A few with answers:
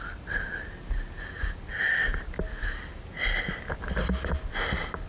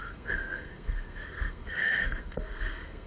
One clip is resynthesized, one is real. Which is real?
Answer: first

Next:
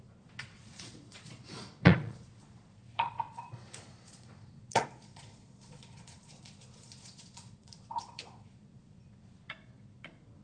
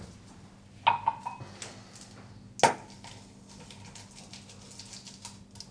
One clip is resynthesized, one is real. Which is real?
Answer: second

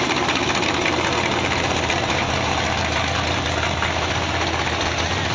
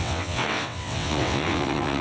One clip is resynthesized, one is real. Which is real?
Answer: first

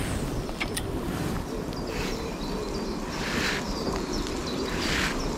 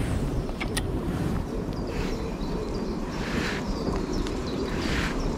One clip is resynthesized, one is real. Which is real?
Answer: first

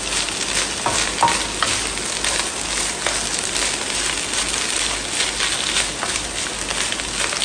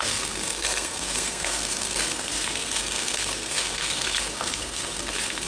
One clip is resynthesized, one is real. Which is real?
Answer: first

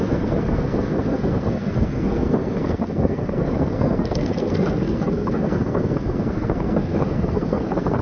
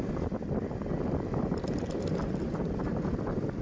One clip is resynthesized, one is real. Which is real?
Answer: second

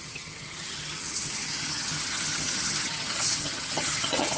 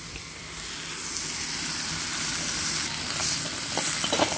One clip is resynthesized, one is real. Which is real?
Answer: second